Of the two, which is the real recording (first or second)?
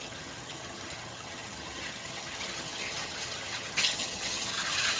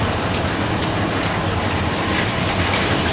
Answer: second